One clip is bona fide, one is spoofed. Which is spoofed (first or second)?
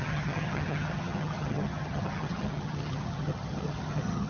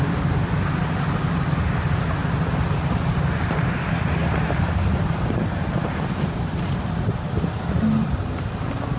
first